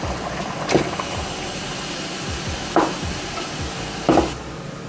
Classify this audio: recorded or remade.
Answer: recorded